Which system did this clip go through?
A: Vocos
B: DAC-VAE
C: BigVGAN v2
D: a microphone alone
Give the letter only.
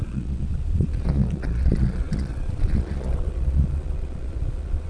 A